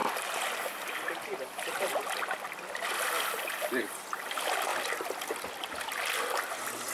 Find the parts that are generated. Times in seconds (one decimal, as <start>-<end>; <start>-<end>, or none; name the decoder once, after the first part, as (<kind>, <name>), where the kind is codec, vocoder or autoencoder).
none